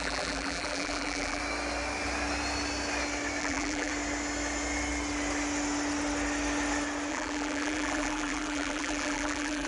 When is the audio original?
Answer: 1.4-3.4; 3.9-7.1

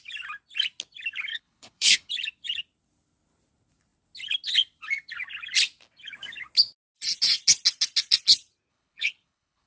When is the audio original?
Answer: 0.0-1.3; 2.1-8.7

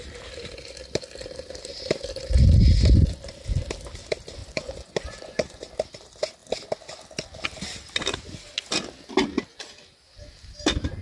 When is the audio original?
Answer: 0.0-4.4; 5.7-11.0

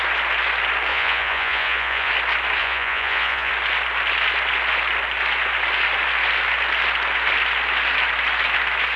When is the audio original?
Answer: 0.0-0.9; 2.1-2.6; 3.5-9.0

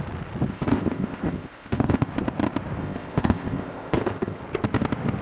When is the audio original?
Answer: 0.0-0.5; 2.1-2.8; 4.4-5.2